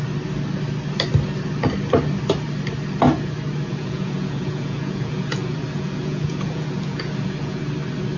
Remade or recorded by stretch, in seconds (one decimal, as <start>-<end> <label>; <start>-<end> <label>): 0.0-3.7 recorded; 3.7-7.6 remade; 7.6-8.2 recorded